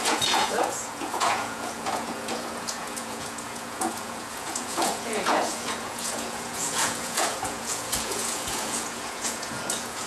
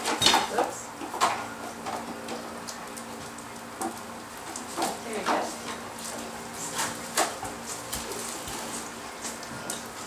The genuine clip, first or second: second